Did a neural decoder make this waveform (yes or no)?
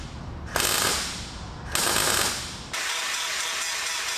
no